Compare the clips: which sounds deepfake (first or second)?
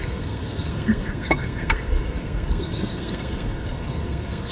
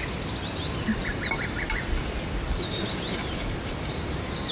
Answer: first